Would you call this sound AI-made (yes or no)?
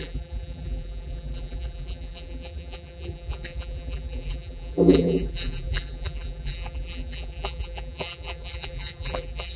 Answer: yes